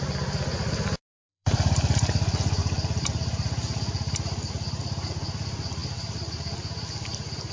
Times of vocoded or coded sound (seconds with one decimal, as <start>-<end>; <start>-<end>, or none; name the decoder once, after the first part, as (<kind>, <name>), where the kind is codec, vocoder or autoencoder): 1.2-1.7 (vocoder, BigVGAN v2); 2.6-4.5